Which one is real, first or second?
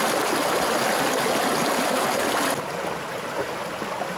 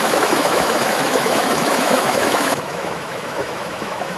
first